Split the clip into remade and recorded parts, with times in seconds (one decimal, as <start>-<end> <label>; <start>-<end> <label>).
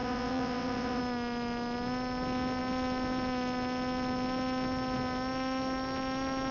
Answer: 0.0-1.0 remade; 1.0-6.5 recorded